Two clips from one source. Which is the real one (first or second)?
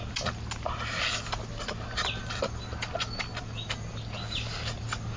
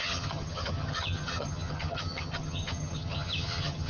first